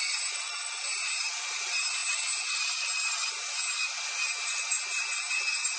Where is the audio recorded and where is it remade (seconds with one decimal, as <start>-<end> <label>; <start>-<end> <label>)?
0.0-5.8 recorded